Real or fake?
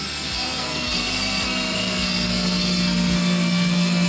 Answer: fake